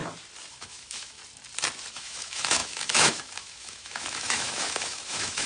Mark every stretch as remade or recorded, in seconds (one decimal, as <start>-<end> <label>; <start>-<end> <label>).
0.0-0.5 recorded; 0.5-1.2 remade; 1.2-1.9 recorded; 1.9-5.5 remade